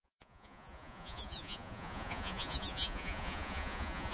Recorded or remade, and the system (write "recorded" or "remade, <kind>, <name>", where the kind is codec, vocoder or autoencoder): remade, vocoder, Vocos